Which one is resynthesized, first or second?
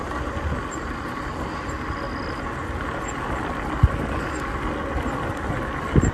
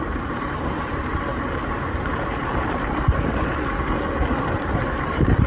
second